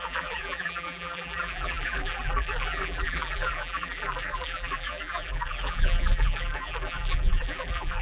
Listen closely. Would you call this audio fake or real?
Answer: fake